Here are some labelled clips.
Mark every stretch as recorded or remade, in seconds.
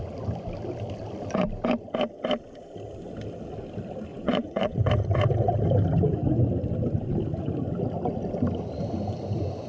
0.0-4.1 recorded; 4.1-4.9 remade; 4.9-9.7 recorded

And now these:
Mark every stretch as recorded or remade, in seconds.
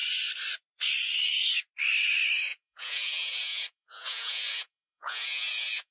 0.0-2.5 recorded; 2.5-5.9 remade